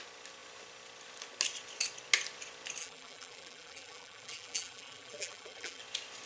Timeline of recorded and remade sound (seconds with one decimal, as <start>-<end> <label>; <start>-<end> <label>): 0.0-2.8 recorded; 2.8-5.8 remade; 5.8-6.3 recorded